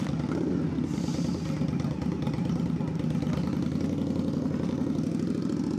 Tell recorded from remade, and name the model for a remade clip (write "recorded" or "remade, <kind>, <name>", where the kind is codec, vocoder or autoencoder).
recorded